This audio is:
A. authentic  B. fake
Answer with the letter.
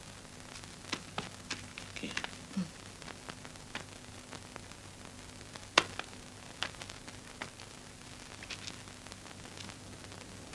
A